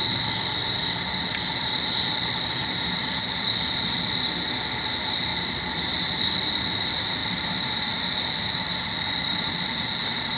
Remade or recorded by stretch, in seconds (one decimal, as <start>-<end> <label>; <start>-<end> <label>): 0.0-5.3 recorded; 5.3-6.7 remade; 6.7-7.2 recorded; 7.2-8.2 remade; 8.2-10.4 recorded